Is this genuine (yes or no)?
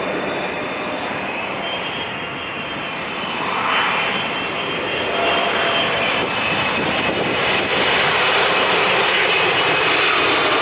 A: no